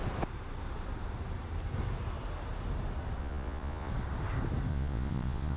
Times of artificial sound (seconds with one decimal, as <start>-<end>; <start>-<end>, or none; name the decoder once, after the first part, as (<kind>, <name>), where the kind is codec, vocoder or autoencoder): 3.2-3.9 (vocoder, Vocos); 4.7-5.6